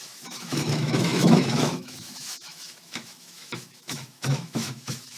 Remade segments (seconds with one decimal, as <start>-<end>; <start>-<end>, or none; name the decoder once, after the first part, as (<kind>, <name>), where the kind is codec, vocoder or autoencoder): 0.0-5.2 (autoencoder, DAC-VAE)

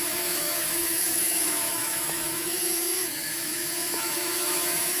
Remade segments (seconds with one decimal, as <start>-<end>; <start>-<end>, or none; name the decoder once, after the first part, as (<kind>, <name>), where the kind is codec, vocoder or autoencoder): 0.0-5.0 (autoencoder, DAC-VAE)